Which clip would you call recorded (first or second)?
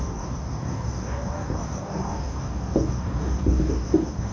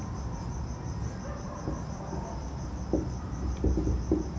second